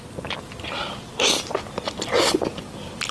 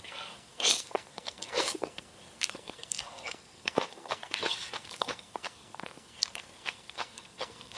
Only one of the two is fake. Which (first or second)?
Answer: second